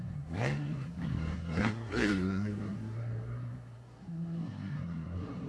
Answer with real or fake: fake